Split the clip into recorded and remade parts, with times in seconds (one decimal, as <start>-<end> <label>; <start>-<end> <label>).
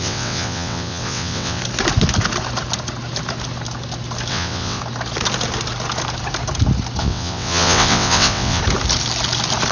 0.0-1.6 remade; 1.6-4.3 recorded; 4.3-4.8 remade; 4.8-7.0 recorded; 7.0-8.6 remade; 8.6-9.7 recorded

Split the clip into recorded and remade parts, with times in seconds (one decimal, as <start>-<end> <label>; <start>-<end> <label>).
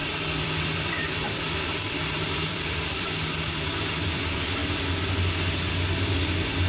0.0-4.6 remade; 4.6-6.2 recorded; 6.2-6.7 remade